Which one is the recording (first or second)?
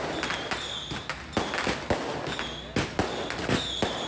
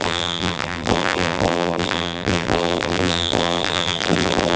first